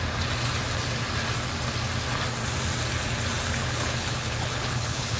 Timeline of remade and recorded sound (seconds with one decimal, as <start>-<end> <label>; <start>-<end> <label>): 0.0-3.6 recorded; 3.6-5.2 remade